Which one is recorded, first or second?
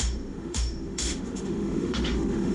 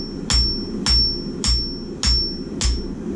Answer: second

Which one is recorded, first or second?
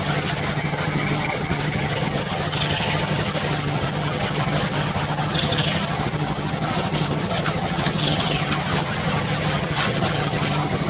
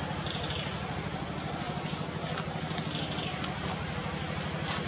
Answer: second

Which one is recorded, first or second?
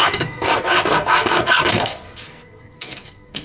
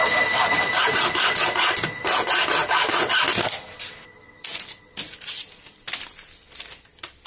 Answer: second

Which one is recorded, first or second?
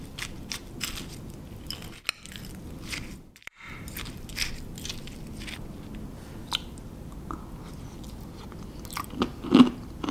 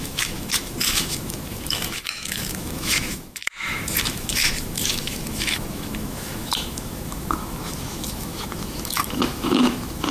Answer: first